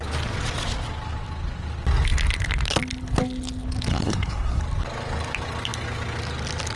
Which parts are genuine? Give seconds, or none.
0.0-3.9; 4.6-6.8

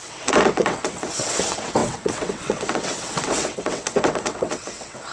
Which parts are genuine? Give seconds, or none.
none